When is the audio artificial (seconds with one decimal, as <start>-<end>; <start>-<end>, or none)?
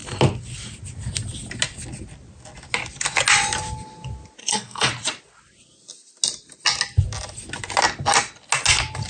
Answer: 4.4-4.9